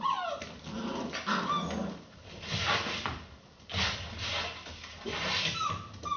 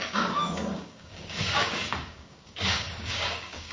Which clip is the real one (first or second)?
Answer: first